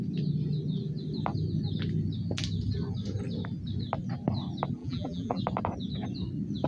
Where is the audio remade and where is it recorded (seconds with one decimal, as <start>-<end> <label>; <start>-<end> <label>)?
0.0-4.8 recorded; 4.8-5.4 remade; 5.4-6.7 recorded